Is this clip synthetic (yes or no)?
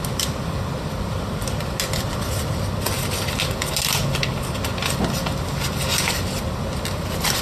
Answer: no